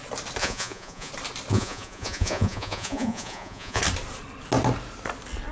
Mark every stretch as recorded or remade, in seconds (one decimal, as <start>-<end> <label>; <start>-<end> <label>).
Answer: 0.0-0.4 recorded; 0.4-1.1 remade; 1.1-1.5 recorded; 1.5-3.8 remade; 3.8-5.5 recorded